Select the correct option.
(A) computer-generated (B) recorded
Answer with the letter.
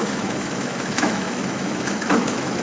A